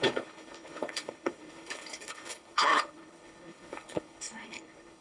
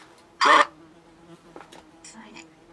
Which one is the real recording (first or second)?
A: second